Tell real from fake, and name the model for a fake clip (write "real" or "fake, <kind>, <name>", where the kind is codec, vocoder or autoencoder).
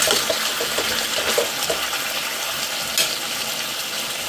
real